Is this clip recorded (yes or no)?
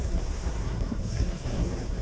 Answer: no